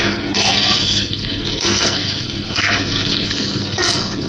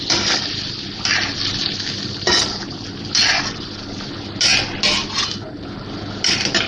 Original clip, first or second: second